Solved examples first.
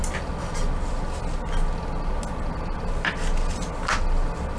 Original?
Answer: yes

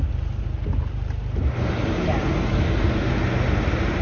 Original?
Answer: yes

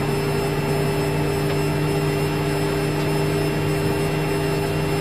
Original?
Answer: yes